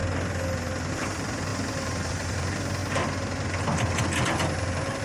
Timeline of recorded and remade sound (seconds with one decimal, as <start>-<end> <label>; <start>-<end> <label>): 0.0-0.9 recorded; 0.9-1.5 remade; 1.5-2.1 recorded; 2.1-2.8 remade; 2.8-5.0 recorded